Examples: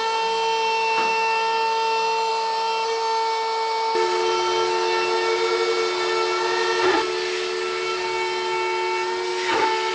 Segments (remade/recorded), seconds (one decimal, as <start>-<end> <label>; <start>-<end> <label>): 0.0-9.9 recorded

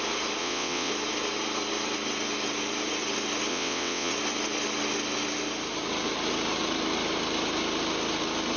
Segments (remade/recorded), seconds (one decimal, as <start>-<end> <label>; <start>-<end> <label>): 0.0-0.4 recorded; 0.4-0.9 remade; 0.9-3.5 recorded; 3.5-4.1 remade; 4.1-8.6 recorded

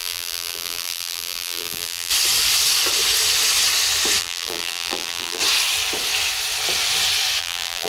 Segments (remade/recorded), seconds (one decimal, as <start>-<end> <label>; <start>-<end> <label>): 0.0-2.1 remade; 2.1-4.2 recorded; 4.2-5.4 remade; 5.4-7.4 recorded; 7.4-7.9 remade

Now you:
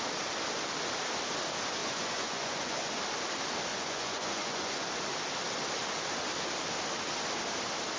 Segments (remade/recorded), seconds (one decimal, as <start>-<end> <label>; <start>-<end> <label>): 0.0-1.8 recorded; 1.8-2.9 remade; 2.9-3.7 recorded; 3.7-4.9 remade; 4.9-8.0 recorded

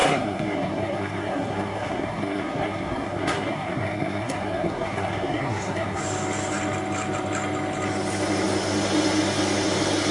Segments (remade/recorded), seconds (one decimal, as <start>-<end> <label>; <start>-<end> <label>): 0.0-6.0 remade; 6.0-10.1 recorded

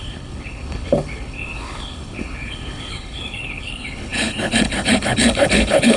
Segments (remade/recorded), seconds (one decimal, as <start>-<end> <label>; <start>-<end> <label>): 0.0-6.0 remade